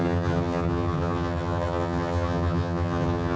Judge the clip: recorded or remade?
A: remade